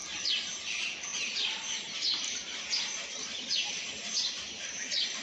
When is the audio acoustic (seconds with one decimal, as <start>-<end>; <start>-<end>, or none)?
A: 0.0-5.2